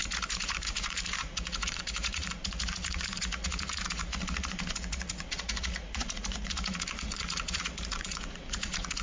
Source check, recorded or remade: remade